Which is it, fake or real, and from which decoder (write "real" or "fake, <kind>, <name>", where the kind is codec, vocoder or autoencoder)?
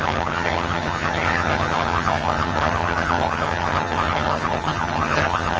fake, vocoder, HiFi-GAN